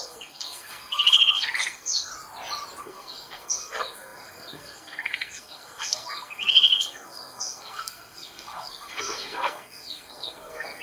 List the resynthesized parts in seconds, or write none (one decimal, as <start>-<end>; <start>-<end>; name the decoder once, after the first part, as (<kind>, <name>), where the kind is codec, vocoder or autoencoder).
0.0-2.1 (codec, SNAC); 2.8-10.8